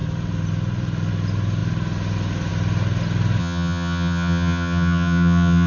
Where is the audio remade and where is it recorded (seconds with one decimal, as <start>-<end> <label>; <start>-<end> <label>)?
0.0-3.4 recorded; 3.4-5.7 remade